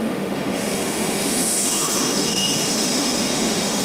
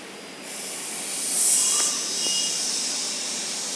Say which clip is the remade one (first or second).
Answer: first